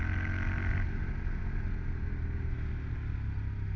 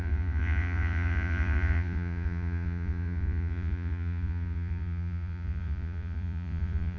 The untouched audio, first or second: first